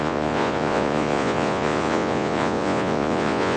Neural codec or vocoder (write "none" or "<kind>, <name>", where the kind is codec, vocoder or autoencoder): vocoder, Vocos